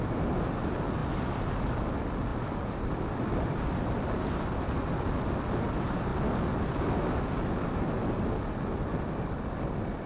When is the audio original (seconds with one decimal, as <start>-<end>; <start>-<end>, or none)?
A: 0.0-2.3; 4.0-10.1